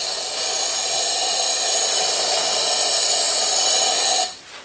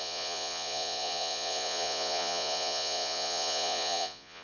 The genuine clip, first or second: first